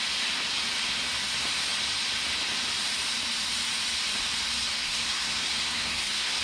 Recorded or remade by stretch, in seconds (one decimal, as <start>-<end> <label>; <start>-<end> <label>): 0.0-4.8 recorded; 4.8-6.4 remade